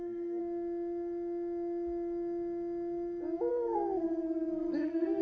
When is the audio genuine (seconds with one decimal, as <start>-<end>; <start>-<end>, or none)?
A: 0.4-3.5